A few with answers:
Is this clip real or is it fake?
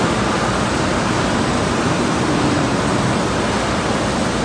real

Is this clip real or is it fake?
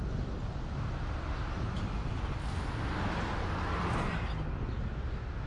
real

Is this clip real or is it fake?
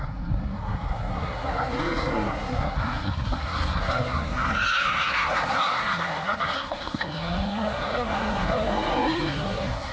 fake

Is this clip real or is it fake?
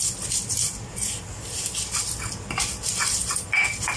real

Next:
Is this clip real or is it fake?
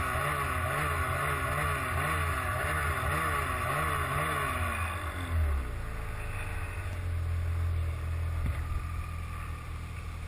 real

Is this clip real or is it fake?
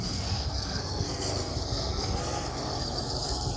fake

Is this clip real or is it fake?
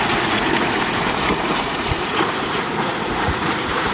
fake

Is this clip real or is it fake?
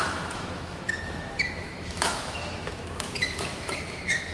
fake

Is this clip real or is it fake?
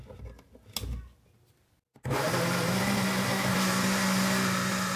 real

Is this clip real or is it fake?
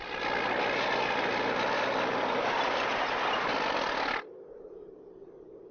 real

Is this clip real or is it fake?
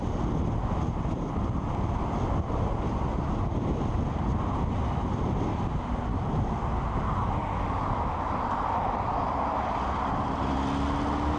real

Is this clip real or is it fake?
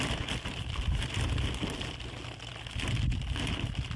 real